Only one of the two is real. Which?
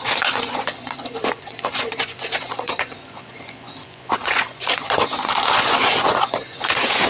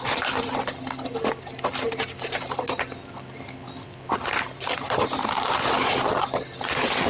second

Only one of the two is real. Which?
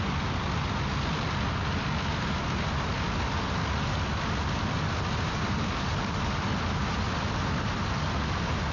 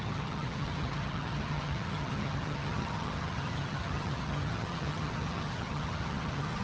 first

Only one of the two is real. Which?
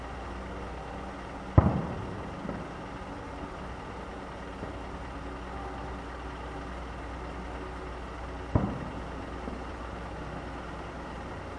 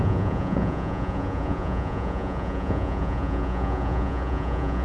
first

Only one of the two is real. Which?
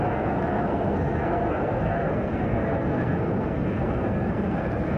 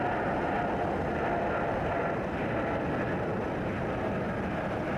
second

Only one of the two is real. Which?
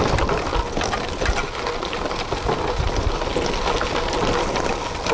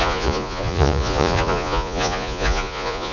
first